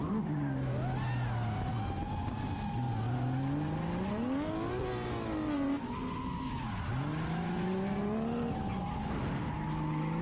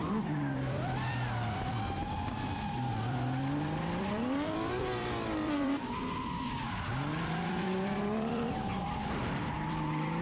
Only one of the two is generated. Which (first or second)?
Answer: second